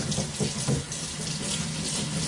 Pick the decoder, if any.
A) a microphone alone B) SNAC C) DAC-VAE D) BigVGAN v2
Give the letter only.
A